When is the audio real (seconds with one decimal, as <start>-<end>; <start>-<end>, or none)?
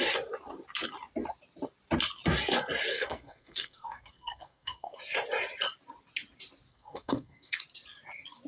0.0-2.9; 5.0-6.7; 7.6-8.5